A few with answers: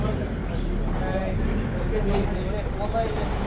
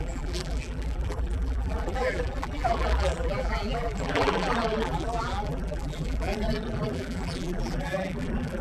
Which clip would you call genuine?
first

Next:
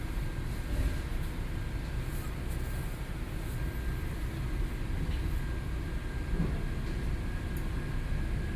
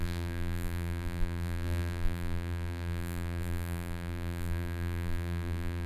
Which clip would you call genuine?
first